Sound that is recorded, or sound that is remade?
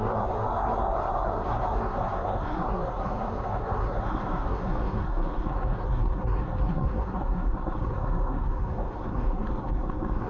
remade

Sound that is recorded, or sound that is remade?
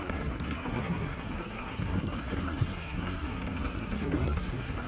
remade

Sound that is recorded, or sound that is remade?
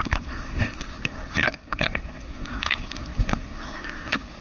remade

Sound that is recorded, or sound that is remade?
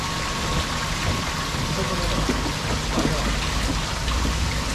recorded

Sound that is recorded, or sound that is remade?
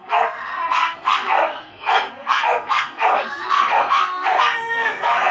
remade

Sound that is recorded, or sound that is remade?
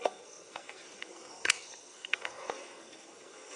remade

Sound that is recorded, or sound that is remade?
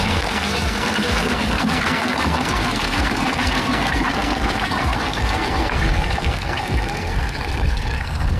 remade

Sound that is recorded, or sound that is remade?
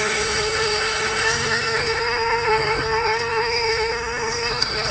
remade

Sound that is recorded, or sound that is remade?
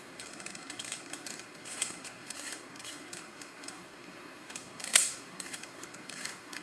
remade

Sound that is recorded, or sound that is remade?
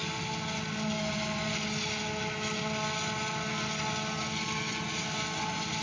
recorded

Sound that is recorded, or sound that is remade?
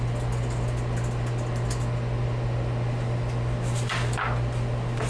recorded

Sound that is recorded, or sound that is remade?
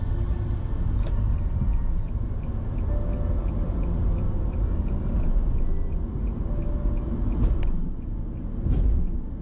recorded